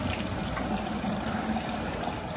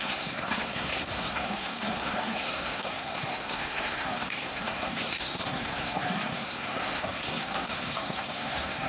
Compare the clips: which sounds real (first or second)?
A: first